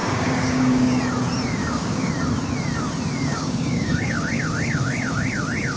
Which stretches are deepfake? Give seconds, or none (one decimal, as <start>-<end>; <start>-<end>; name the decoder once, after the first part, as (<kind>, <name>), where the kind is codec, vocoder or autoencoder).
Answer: 0.0-1.0 (codec, DAC); 1.6-2.1; 3.2-4.2

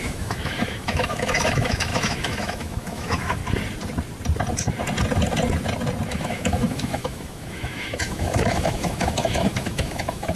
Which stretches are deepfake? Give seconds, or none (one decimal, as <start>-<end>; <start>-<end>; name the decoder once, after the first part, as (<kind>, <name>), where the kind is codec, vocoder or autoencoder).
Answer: 0.0-3.4 (autoencoder, DAC-VAE); 6.1-10.4

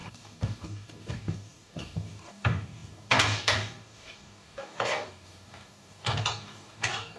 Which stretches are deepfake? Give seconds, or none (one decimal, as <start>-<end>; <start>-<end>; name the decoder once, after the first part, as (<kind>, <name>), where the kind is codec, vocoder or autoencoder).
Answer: 0.0-7.2 (codec, DAC)

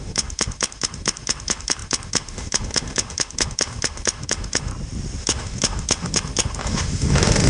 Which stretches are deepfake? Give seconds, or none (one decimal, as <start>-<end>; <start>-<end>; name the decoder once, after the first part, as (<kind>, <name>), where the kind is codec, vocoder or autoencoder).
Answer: 0.0-4.7 (autoencoder, DAC-VAE); 5.2-7.5